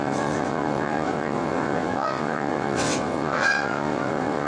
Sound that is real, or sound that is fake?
fake